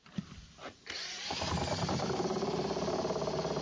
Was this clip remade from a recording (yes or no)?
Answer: no